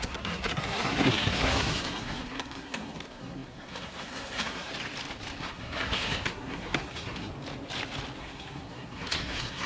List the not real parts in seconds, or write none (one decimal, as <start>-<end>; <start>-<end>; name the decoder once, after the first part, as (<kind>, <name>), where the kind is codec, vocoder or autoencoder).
0.0-4.7 (codec, SNAC); 5.4-7.3; 8.2-9.7